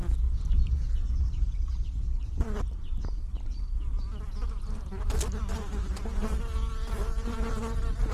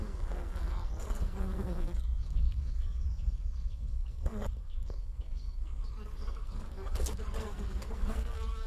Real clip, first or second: first